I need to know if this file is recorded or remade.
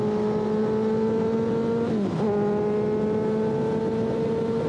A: recorded